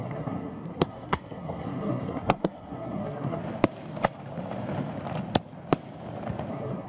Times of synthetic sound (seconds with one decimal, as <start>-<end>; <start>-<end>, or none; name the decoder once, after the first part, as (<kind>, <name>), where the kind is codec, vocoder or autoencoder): 0.0-3.4 (codec, SNAC); 6.5-6.9